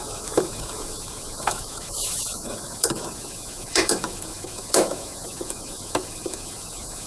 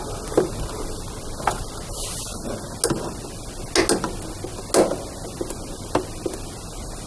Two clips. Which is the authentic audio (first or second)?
second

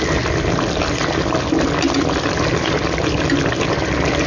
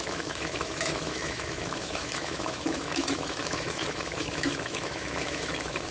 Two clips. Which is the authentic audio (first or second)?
first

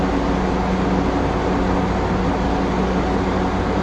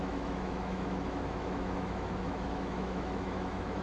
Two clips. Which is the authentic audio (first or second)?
first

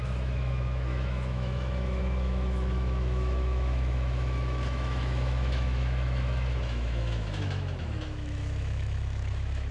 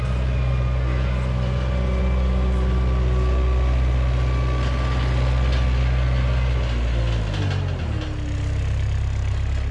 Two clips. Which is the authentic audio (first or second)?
second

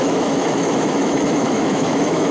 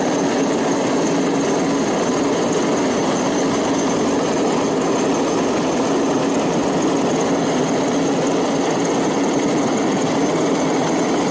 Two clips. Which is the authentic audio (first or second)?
second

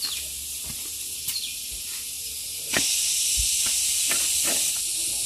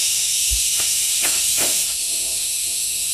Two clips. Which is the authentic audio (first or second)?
first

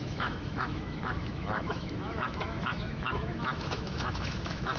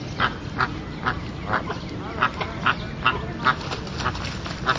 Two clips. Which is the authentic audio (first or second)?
second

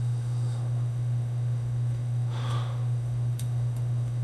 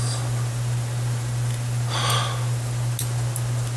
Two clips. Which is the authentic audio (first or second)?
second